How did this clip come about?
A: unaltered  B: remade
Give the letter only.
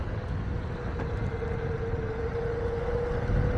A